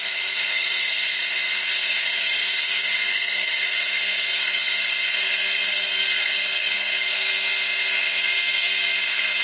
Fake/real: fake